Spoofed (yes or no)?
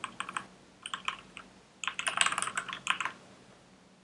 no